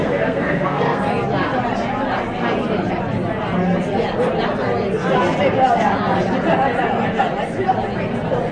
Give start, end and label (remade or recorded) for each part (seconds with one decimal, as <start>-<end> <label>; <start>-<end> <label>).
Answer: 0.0-1.1 remade; 1.1-8.5 recorded